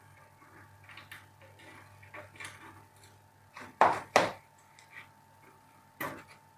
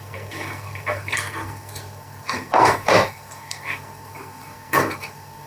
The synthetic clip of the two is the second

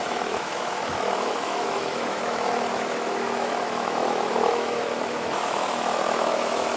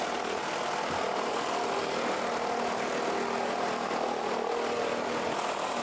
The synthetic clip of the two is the first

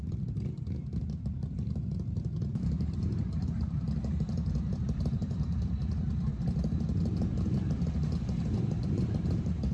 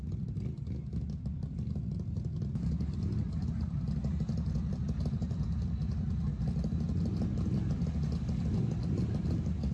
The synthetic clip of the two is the first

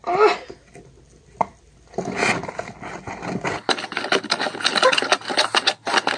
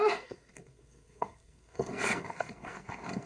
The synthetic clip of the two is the second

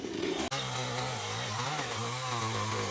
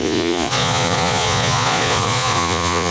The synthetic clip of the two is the second